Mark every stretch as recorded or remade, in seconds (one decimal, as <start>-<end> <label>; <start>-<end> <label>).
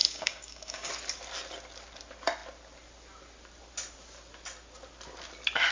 0.0-0.9 remade; 0.9-5.7 recorded